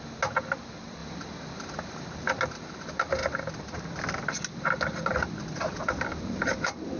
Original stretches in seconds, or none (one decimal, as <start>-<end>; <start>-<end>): 0.0-7.0